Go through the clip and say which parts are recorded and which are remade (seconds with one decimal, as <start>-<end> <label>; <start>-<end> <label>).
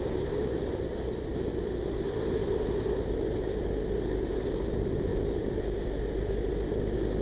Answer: 0.0-7.2 recorded